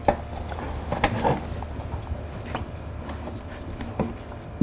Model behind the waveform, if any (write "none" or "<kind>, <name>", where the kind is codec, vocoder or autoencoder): none